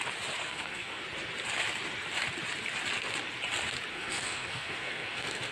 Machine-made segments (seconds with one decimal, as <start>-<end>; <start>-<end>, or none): 0.4-1.0; 3.9-5.5